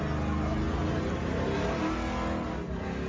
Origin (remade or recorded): recorded